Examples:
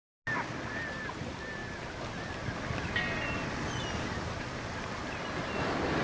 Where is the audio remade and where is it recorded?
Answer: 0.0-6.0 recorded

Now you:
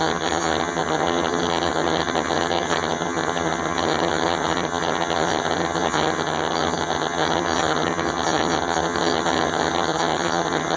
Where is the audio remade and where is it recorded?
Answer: 0.0-10.8 remade

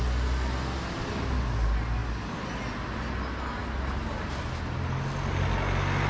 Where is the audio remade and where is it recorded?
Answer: 0.0-6.1 recorded